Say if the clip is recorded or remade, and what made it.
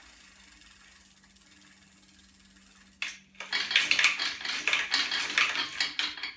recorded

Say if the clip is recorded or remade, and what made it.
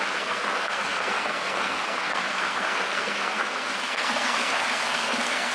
remade, codec, SNAC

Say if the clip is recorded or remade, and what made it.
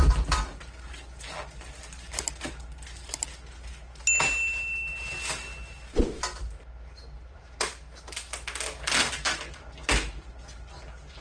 recorded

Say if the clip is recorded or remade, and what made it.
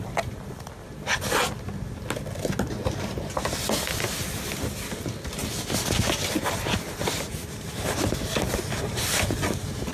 recorded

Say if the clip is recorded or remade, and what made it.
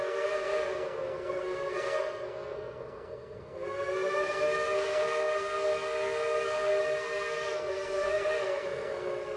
remade, codec, SNAC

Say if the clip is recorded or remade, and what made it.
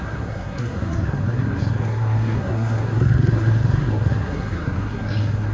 remade, codec, SNAC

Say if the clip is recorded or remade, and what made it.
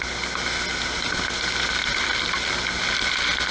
recorded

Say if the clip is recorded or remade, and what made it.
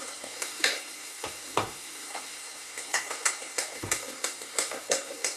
remade, codec, SNAC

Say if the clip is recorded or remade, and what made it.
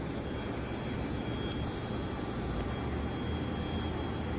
recorded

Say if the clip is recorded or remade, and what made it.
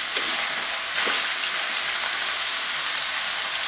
recorded